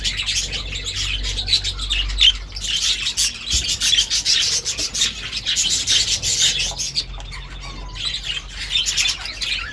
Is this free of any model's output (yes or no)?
yes